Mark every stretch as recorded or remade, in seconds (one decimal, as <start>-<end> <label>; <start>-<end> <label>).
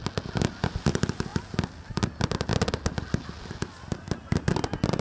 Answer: 0.0-5.0 recorded